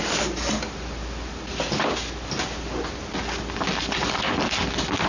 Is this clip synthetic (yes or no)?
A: no